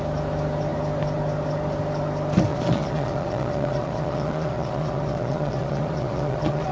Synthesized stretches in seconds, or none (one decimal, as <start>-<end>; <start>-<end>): 2.5-6.7